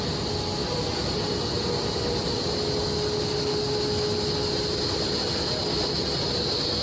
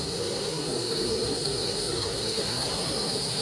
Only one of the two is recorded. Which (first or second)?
first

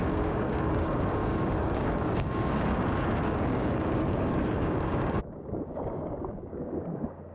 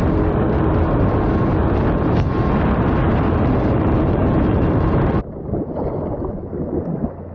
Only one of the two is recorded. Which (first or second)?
second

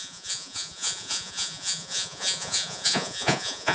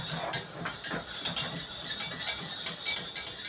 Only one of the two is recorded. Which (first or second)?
second